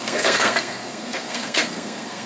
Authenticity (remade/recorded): remade